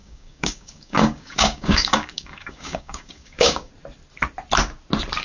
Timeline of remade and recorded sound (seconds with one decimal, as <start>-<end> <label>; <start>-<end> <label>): 0.0-3.7 remade; 3.7-5.2 recorded